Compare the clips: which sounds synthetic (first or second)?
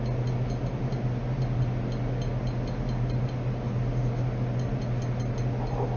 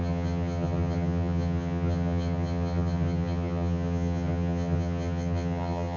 second